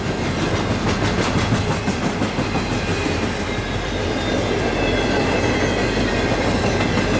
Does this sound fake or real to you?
real